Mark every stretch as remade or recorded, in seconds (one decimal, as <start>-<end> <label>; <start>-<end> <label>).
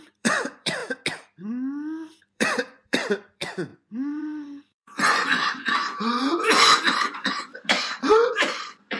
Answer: 0.0-0.8 remade; 0.8-2.2 recorded; 2.2-9.0 remade